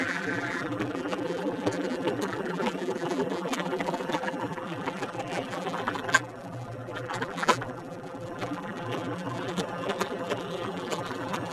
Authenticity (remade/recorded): remade